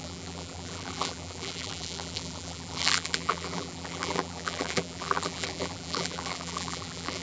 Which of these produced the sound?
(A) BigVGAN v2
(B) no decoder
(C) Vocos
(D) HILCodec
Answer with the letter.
A